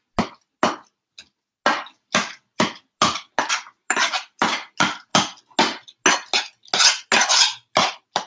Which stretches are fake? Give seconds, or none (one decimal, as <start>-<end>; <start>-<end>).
none